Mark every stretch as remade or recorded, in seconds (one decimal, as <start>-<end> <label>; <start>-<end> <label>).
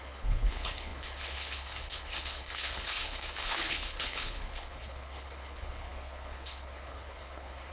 0.0-7.7 remade